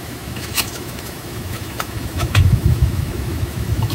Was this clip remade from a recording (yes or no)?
yes